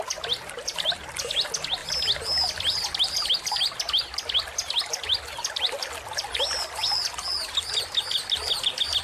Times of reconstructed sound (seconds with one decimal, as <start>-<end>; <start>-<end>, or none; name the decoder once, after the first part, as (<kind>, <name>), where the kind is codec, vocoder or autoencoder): none